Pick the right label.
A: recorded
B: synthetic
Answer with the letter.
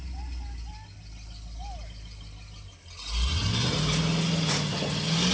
A